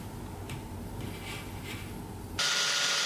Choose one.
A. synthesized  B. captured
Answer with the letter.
B